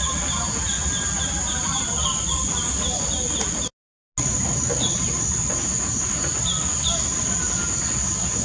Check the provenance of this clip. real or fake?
real